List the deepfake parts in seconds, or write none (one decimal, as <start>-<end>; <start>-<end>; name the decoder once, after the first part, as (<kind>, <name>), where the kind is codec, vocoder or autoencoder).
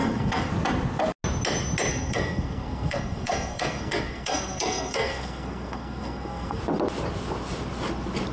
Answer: 0.0-0.5 (codec, SNAC); 1.9-6.6